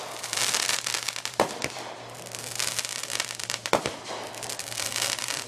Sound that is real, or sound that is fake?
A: fake